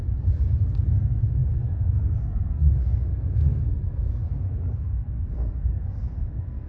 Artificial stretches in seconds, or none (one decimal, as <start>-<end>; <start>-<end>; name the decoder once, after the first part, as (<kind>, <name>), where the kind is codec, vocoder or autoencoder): 0.9-6.7 (codec, SNAC)